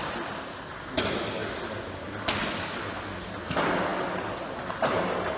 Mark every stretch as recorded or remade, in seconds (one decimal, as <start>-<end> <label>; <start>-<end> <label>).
0.0-5.4 recorded